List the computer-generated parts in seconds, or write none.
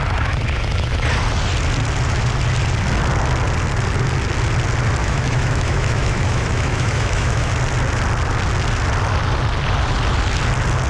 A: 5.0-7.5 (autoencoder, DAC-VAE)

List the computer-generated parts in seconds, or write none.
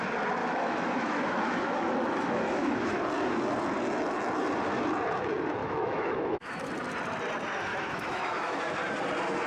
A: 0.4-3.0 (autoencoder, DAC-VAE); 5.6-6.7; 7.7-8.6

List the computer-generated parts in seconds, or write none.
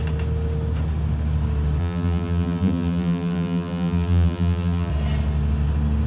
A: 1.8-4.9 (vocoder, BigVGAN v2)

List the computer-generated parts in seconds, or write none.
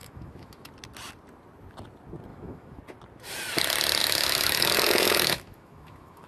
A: 0.0-0.7 (autoencoder, DAC-VAE); 2.3-2.8; 4.0-6.3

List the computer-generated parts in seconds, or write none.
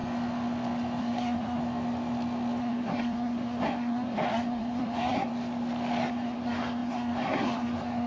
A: 1.0-1.6 (codec, SNAC); 2.6-5.3; 6.1-8.1